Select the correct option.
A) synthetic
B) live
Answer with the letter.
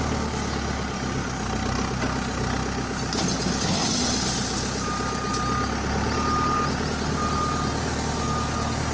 B